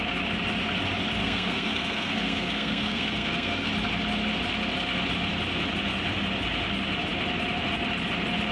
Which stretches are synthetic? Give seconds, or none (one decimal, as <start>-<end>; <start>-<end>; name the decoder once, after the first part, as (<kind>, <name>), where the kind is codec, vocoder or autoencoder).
1.2-3.7 (codec, SNAC)